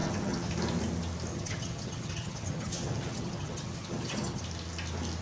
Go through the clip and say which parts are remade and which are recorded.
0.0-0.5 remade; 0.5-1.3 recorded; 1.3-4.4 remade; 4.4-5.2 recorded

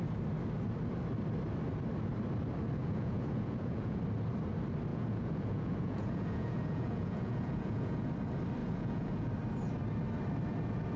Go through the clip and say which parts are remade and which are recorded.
0.0-2.8 recorded; 2.8-4.0 remade; 4.0-4.9 recorded; 4.9-8.1 remade; 8.1-8.6 recorded; 8.6-9.3 remade; 9.3-11.0 recorded